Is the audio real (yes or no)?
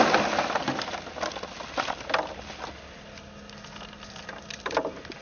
yes